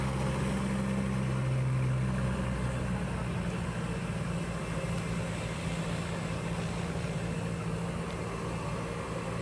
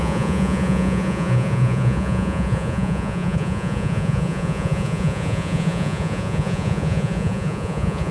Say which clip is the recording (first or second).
first